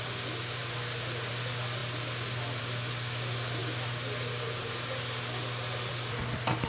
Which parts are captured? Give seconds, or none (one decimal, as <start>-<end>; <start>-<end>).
0.0-6.7